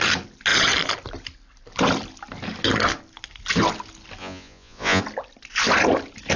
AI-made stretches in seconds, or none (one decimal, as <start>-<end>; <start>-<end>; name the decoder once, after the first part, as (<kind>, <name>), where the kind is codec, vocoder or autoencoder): 4.2-5.0 (vocoder, Vocos)